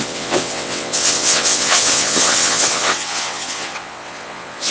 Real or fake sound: fake